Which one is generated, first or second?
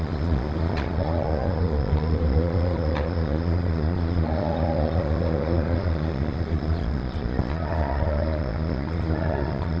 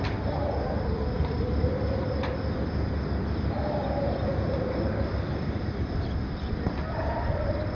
first